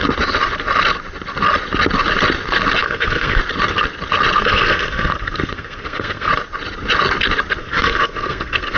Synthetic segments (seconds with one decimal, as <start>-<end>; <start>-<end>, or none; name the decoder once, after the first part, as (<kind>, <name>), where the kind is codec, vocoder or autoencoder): 2.8-3.4 (codec, SNAC); 4.4-6.3; 7.6-8.8